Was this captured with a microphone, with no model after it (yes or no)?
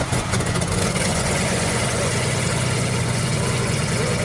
no